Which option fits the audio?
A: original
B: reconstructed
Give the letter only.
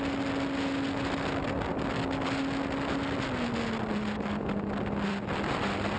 A